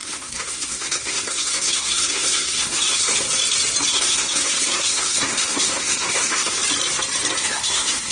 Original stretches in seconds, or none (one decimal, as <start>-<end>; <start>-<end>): 3.1-3.9; 6.6-7.4